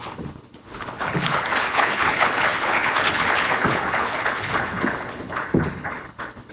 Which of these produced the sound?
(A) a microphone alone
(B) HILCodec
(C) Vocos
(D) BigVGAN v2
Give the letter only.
B